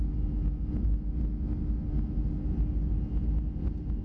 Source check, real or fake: real